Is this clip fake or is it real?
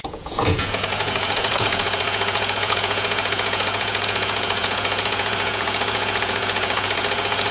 fake